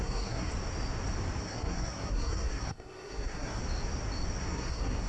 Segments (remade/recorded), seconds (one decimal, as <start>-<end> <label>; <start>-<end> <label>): 0.0-0.5 remade; 0.5-1.4 recorded; 1.4-3.6 remade; 3.6-4.4 recorded; 4.4-5.1 remade